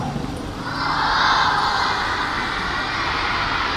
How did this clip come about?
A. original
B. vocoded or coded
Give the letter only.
A